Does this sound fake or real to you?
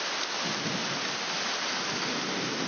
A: real